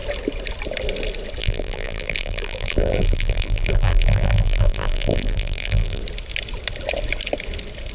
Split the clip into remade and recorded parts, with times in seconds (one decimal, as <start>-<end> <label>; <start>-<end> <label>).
0.0-1.4 recorded; 1.4-6.0 remade; 6.0-7.9 recorded